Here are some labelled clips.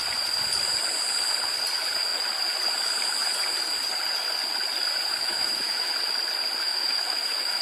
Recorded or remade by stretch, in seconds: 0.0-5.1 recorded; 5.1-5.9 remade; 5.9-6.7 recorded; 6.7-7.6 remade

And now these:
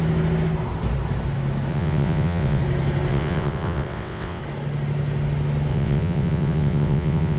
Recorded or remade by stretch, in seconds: 0.0-1.7 recorded; 1.7-2.6 remade; 2.6-3.1 recorded; 3.1-4.4 remade; 4.4-5.7 recorded; 5.7-7.4 remade